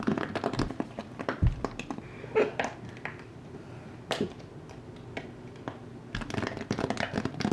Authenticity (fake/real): real